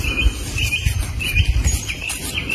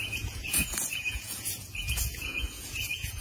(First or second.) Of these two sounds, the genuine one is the first